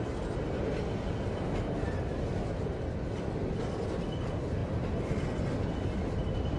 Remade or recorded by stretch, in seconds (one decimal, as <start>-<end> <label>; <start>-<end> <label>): 0.0-6.6 recorded